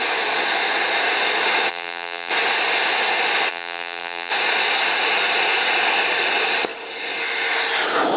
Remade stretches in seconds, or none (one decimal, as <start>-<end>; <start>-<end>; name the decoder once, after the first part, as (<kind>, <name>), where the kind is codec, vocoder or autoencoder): 1.7-2.3 (vocoder, BigVGAN v2); 3.5-4.3